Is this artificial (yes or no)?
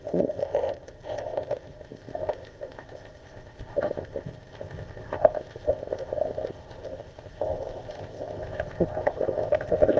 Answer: yes